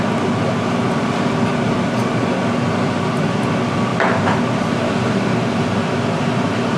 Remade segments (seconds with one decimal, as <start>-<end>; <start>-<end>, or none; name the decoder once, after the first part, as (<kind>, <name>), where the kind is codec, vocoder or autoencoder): 3.9-4.4 (vocoder, BigVGAN v2)